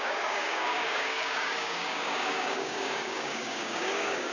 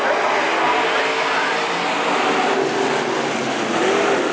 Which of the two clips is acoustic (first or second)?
second